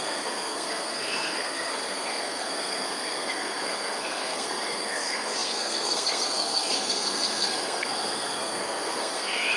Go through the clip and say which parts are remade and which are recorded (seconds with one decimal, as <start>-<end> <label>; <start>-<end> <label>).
0.0-9.6 remade